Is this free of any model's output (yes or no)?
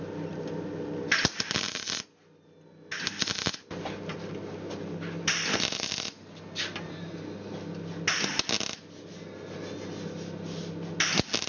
yes